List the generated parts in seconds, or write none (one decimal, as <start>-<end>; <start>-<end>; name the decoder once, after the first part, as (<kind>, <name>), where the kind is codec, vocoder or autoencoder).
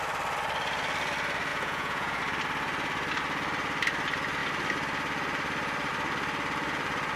1.5-2.2 (vocoder, Vocos)